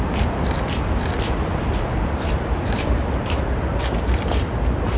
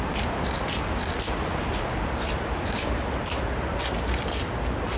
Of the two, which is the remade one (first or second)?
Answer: first